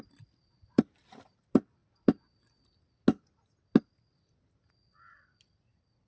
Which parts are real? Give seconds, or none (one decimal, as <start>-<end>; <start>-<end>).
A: 1.8-5.5